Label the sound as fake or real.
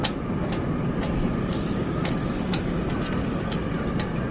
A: real